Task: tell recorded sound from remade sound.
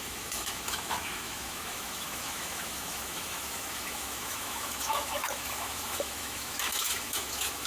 remade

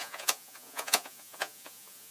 remade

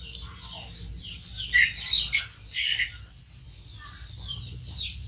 recorded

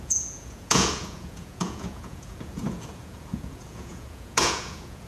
remade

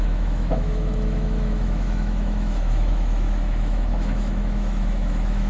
remade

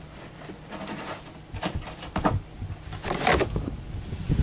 recorded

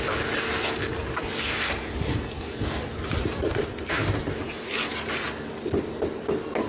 recorded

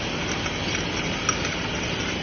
recorded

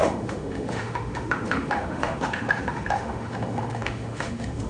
remade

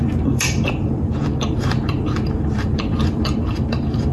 remade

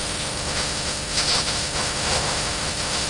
remade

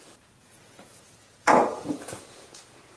remade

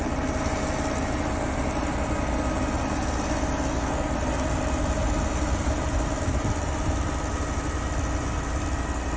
recorded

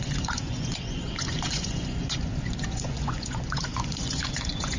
remade